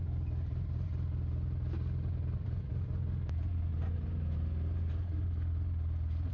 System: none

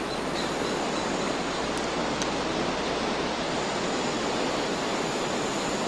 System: none